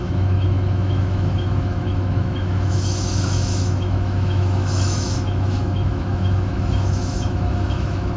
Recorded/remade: remade